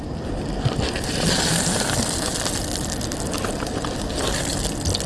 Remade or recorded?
recorded